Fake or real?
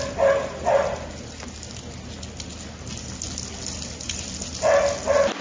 real